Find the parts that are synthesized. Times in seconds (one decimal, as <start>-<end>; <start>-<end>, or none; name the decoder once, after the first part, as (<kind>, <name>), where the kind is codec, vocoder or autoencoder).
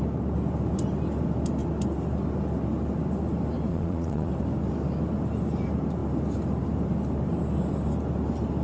3.7-4.3 (vocoder, Vocos)